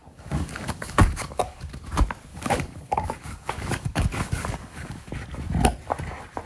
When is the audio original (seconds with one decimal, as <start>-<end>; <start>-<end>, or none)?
1.8-2.3; 5.1-6.5